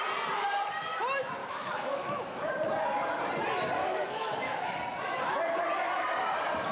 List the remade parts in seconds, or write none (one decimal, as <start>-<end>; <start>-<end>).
1.4-2.5; 3.8-4.8